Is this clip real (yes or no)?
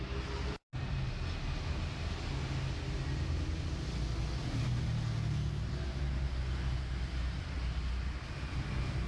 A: yes